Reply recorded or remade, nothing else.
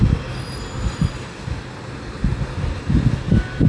recorded